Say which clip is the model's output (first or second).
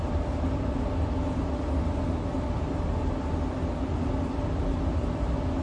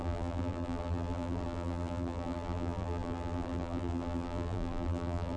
second